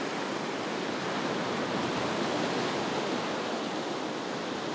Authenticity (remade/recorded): recorded